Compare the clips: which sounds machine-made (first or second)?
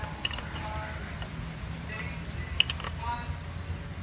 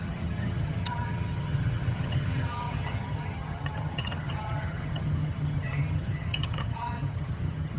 second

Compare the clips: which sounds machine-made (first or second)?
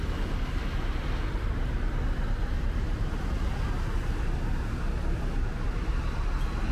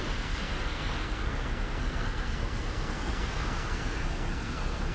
second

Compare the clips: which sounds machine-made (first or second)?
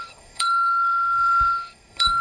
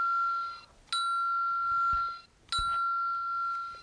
first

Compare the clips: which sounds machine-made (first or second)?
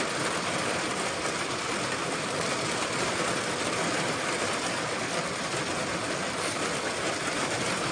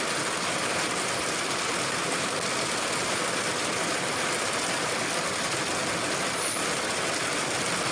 first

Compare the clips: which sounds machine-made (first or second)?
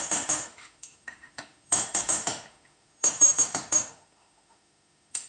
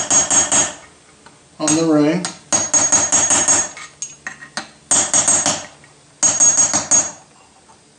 first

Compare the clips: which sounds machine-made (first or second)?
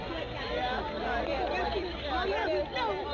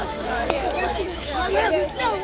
second